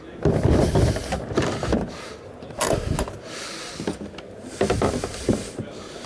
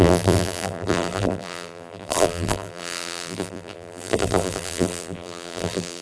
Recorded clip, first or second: first